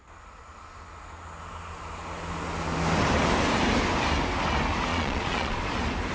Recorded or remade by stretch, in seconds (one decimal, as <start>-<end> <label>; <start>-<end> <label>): 0.0-4.9 recorded; 4.9-5.6 remade; 5.6-6.1 recorded